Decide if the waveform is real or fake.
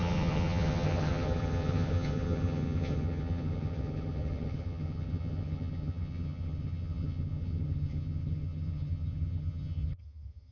fake